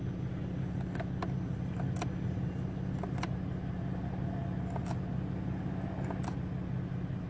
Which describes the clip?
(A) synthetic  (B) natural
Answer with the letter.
B